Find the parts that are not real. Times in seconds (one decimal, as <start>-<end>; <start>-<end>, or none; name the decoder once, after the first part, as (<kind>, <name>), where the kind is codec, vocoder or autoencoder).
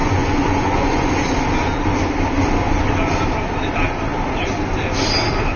0.0-1.1 (vocoder, Vocos)